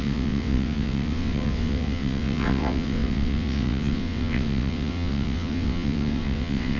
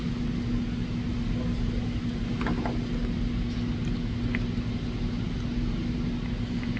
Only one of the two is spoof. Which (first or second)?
first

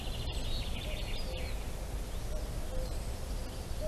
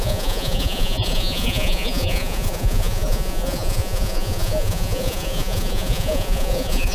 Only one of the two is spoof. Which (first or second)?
second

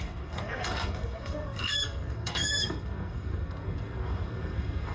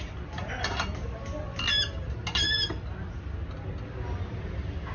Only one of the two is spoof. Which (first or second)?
first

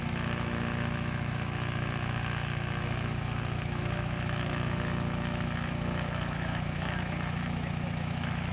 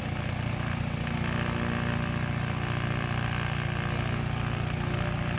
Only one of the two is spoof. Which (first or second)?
first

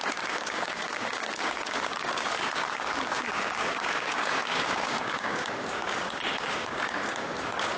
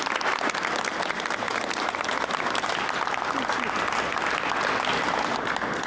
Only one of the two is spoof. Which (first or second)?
first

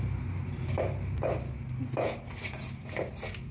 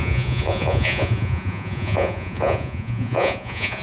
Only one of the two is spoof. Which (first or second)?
second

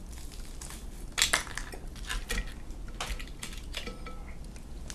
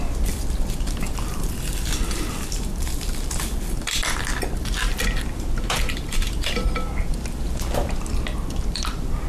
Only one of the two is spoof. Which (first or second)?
second